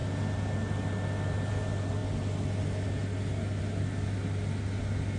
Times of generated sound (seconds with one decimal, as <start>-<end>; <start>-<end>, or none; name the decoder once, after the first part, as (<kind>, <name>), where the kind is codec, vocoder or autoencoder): none